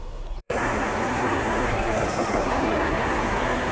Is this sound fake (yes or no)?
yes